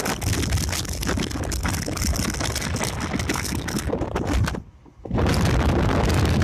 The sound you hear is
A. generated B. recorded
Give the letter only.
B